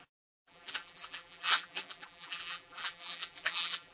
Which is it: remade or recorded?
remade